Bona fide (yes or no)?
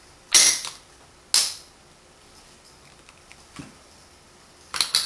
yes